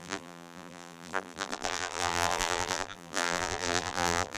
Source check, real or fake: fake